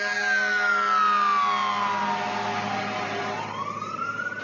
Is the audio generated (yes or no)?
no